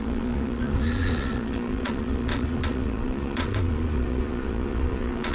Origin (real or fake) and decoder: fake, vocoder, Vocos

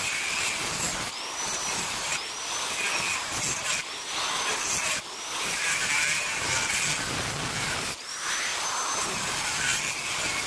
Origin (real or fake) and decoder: real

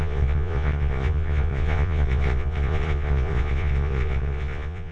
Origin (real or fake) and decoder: fake, vocoder, Vocos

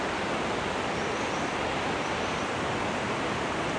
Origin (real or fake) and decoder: real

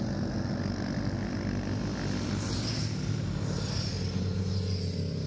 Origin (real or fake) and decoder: real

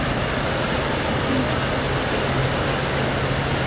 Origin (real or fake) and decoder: real